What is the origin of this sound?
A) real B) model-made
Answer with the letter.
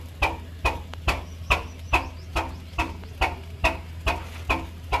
A